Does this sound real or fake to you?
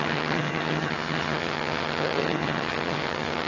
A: fake